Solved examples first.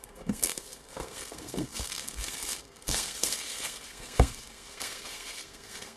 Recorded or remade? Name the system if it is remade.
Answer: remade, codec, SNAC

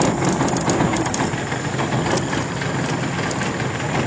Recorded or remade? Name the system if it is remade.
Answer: recorded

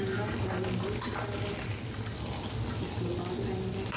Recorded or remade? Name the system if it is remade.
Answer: recorded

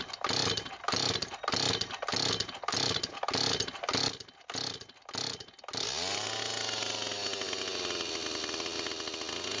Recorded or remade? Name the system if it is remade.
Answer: recorded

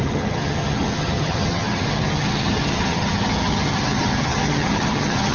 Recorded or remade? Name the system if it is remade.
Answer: remade, vocoder, HiFi-GAN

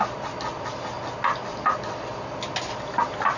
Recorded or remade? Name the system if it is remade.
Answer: recorded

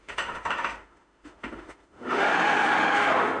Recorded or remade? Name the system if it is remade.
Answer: remade, autoencoder, DAC-VAE